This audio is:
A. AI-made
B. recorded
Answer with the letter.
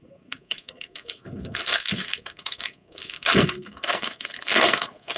A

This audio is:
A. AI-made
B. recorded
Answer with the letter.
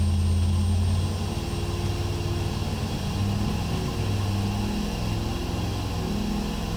B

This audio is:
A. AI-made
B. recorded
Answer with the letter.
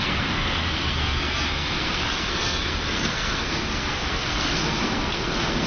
A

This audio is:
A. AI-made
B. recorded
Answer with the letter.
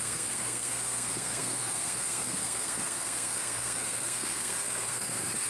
A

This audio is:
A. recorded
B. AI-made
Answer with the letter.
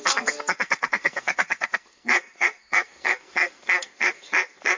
B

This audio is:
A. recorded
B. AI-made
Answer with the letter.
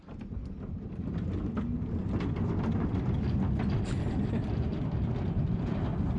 A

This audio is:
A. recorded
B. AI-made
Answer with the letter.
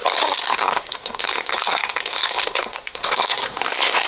B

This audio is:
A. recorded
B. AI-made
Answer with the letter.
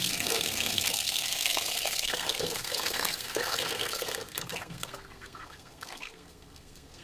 B